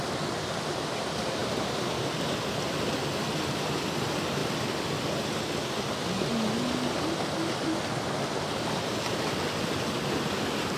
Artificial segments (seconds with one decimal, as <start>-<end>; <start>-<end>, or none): none